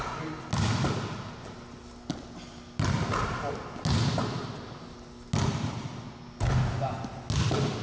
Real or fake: real